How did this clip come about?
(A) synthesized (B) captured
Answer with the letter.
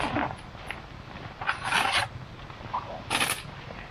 B